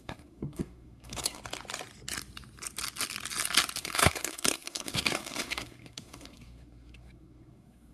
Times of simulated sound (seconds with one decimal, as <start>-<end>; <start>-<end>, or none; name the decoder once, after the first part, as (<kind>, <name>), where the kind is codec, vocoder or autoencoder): 0.0-1.4 (codec, SNAC); 3.8-7.9

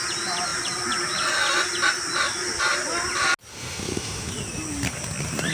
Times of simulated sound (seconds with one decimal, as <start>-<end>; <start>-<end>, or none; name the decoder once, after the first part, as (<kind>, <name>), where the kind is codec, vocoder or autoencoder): 3.5-4.3 (autoencoder, DAC-VAE)